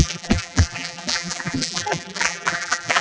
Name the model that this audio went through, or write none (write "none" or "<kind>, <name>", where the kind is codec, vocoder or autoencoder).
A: vocoder, BigVGAN v2